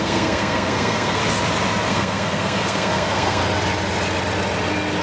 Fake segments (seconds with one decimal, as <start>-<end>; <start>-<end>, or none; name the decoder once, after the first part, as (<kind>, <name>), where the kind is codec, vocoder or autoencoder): 0.0-1.2 (codec, SNAC); 1.9-3.4